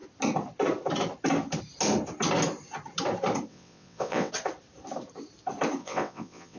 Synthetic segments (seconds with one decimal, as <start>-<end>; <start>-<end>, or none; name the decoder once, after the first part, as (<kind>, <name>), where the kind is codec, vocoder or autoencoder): 3.5-4.3 (vocoder, WaveNeXt); 5.8-6.6